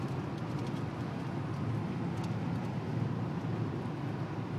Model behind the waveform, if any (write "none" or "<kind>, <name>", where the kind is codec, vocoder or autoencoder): none